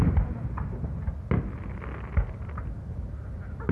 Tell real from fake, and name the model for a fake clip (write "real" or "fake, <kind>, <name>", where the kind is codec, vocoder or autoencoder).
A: real